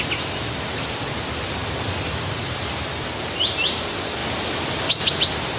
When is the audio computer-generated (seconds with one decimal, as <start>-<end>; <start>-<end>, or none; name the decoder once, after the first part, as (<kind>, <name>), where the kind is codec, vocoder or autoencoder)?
none